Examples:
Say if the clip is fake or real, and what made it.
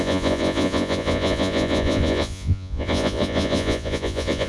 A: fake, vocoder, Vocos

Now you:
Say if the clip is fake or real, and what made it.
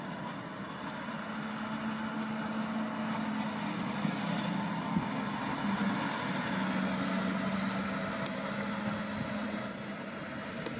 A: real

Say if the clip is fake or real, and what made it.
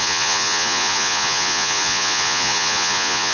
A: fake, vocoder, Vocos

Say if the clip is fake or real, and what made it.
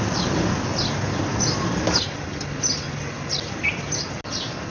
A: real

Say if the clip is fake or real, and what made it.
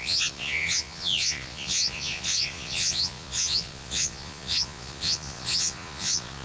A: fake, vocoder, Vocos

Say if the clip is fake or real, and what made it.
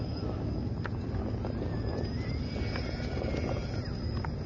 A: real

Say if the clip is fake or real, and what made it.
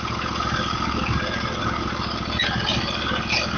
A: real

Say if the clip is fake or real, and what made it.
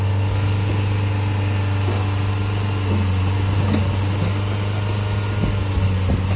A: real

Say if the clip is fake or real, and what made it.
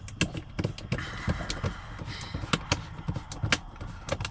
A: real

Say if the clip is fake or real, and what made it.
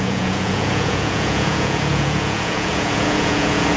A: fake, vocoder, Vocos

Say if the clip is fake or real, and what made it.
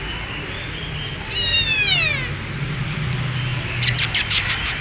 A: real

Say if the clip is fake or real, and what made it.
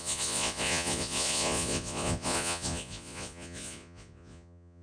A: fake, vocoder, Vocos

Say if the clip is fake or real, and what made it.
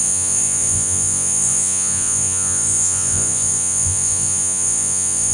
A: fake, vocoder, Vocos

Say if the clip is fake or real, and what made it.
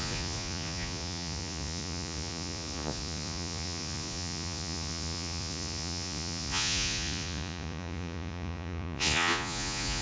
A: fake, vocoder, Vocos